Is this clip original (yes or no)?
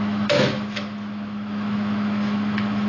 no